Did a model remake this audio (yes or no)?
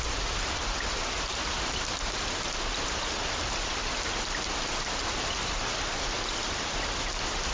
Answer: no